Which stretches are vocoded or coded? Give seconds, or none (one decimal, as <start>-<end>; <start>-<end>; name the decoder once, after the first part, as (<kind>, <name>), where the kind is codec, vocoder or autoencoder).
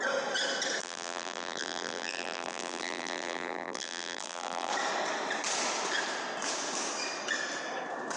0.8-4.7 (vocoder, BigVGAN v2)